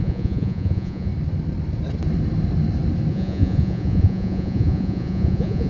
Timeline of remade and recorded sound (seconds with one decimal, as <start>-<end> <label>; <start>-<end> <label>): 0.0-1.1 remade; 1.1-3.1 recorded; 3.1-5.7 remade

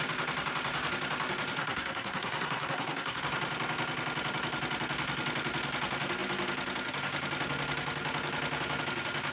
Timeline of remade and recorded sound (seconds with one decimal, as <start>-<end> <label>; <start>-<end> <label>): 0.0-1.6 recorded; 1.6-3.2 remade; 3.2-9.3 recorded

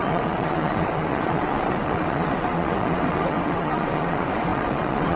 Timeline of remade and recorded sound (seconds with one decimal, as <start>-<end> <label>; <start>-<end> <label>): 0.0-5.2 remade

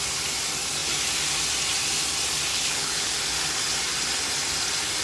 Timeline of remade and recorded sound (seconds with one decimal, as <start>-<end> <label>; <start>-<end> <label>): 0.0-2.5 recorded; 2.5-3.1 remade; 3.1-5.0 recorded

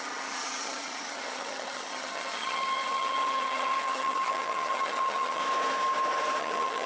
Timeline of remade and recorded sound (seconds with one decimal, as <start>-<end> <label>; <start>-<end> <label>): 0.0-5.4 remade; 5.4-6.4 recorded; 6.4-6.9 remade

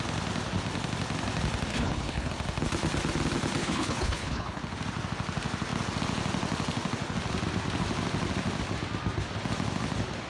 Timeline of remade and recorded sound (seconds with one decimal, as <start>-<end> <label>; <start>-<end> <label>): 0.0-1.7 recorded; 1.7-2.3 remade; 2.3-3.6 recorded; 3.6-4.6 remade; 4.6-10.3 recorded

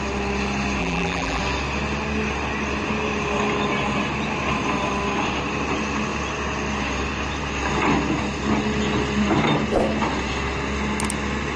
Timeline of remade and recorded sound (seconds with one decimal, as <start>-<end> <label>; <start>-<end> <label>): 0.0-0.8 recorded; 0.8-1.4 remade; 1.4-11.6 recorded